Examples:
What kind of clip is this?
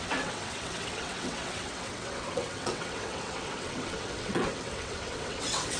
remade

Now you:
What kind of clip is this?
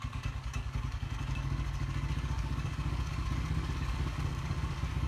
remade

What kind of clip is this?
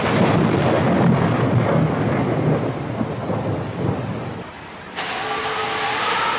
recorded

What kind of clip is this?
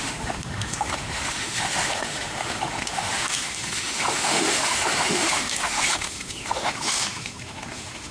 remade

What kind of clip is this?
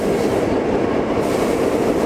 recorded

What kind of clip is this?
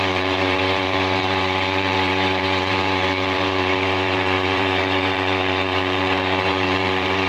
remade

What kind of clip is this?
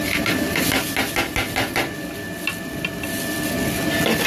recorded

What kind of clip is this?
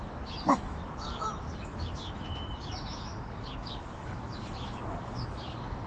remade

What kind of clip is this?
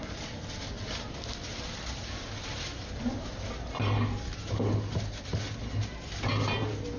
recorded